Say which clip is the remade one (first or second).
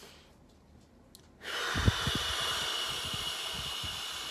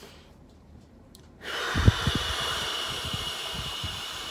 second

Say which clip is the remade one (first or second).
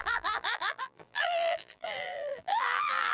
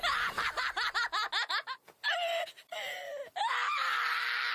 first